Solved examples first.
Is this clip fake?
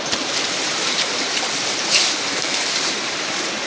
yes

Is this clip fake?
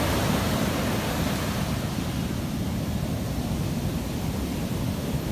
no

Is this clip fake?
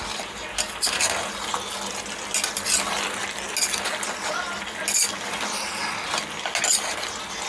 no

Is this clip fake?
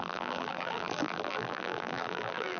yes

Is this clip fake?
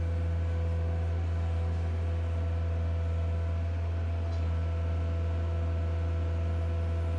no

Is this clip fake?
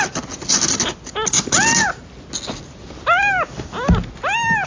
no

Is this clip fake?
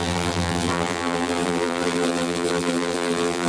yes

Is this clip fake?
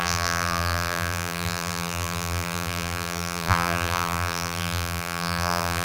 yes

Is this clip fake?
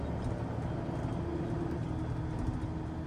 no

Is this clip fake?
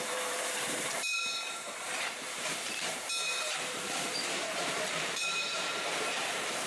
yes